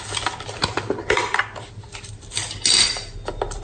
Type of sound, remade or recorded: recorded